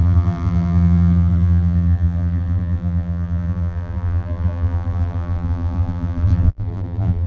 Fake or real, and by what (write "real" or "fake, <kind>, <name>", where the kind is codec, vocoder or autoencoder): fake, vocoder, BigVGAN v2